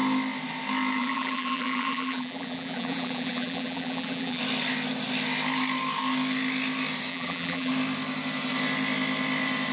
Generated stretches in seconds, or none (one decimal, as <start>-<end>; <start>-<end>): 1.0-4.4; 7.1-7.7